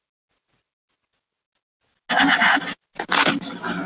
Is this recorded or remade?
recorded